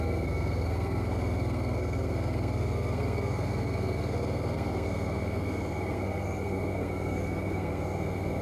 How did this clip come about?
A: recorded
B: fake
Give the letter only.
B